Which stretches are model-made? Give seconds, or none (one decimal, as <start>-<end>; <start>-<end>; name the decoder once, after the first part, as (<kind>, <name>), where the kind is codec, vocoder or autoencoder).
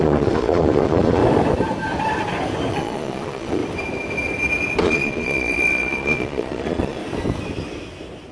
0.0-1.2 (vocoder, Vocos); 2.7-3.6; 4.8-7.0